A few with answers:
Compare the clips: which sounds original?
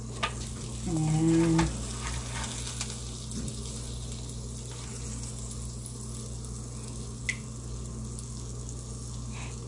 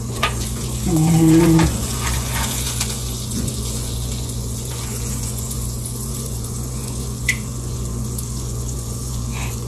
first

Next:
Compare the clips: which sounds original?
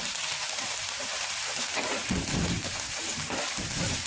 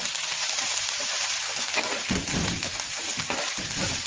first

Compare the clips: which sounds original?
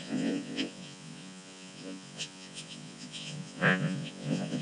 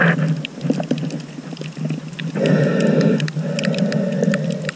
second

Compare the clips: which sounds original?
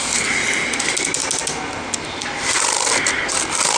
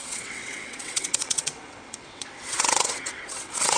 first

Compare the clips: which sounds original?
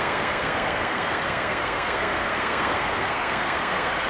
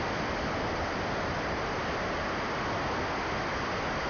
second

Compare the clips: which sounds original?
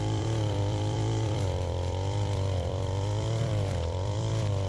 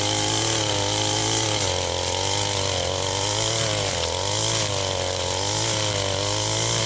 second